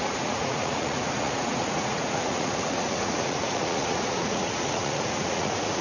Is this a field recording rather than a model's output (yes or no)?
no